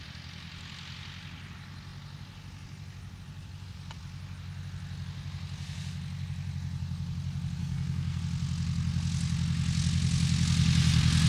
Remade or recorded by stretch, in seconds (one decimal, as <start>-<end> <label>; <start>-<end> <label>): 0.0-7.6 recorded; 7.6-8.2 remade; 8.2-11.3 recorded